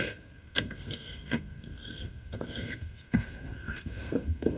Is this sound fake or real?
fake